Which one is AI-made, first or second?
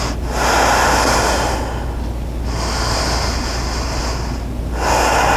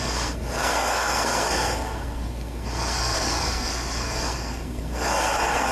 second